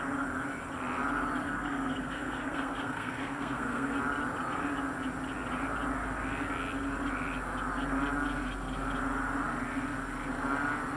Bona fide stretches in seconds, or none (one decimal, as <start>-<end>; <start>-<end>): 0.0-1.4; 4.0-11.0